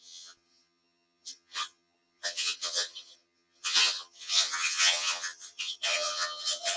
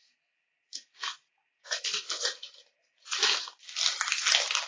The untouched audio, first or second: second